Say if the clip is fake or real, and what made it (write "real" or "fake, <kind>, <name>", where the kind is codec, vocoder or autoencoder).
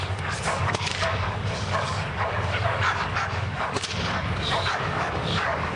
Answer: fake, codec, DAC